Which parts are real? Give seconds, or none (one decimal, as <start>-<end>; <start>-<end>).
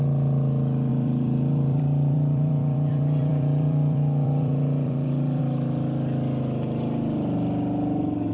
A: 0.0-0.9; 5.4-8.3